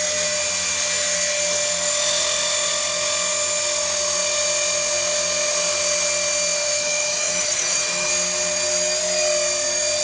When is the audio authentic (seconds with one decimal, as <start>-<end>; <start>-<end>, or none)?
0.0-6.6; 8.1-10.0